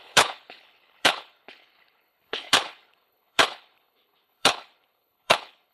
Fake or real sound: fake